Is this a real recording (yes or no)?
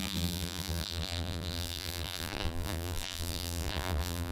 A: no